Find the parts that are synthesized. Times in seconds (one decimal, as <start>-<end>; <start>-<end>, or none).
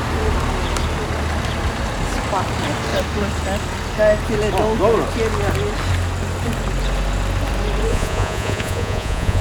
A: 7.9-9.4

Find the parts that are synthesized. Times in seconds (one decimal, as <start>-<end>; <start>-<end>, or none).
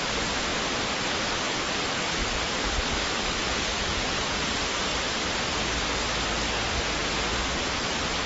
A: 3.4-4.4